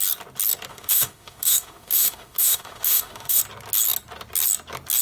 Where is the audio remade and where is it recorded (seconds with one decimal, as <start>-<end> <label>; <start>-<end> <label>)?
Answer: 0.0-0.7 recorded; 0.7-3.4 remade; 3.4-5.0 recorded